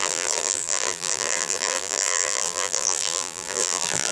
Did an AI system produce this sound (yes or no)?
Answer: yes